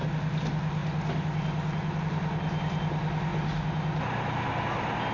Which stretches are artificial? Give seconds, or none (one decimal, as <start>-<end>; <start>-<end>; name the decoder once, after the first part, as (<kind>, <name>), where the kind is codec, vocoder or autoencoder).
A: none